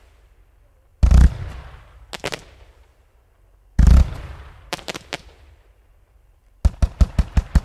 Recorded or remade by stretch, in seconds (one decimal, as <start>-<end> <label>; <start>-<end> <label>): 0.0-0.9 remade; 0.9-4.1 recorded; 4.1-6.4 remade; 6.4-7.6 recorded